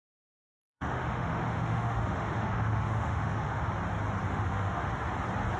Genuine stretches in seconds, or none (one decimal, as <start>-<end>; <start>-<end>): 0.0-0.6; 3.7-4.3; 4.9-5.6